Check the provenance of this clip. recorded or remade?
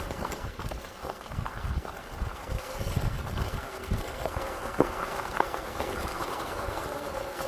remade